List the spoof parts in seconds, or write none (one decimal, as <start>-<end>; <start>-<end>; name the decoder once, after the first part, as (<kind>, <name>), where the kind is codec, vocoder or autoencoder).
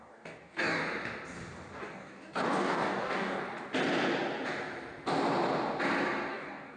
0.0-0.8 (codec, DAC); 1.8-3.4; 6.3-6.8